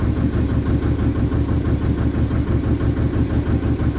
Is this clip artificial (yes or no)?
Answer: no